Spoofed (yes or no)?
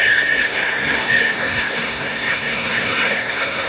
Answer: yes